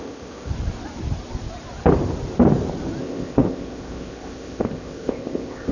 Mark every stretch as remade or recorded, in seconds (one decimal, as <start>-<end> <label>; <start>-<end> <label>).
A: 0.0-0.5 remade; 0.5-3.0 recorded; 3.0-5.7 remade